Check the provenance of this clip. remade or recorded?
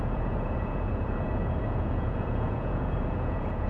remade